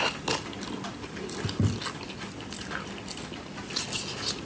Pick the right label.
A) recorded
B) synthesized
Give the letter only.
A